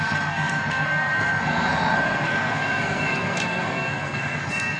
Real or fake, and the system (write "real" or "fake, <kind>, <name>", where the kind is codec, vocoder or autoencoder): fake, codec, SNAC